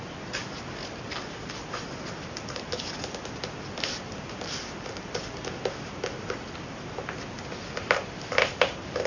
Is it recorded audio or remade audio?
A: recorded